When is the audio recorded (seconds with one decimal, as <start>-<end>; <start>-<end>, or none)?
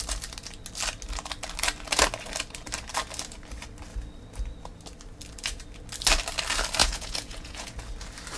0.0-6.8; 7.7-8.4